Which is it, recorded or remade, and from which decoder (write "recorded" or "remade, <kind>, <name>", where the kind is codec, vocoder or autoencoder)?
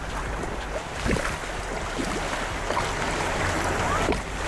recorded